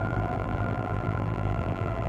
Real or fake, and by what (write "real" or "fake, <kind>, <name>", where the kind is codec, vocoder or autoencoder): fake, vocoder, BigVGAN v2